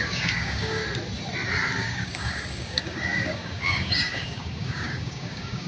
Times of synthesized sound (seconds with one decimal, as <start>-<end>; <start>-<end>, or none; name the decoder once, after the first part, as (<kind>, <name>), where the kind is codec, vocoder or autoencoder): 0.0-0.8 (codec, DAC); 1.8-5.7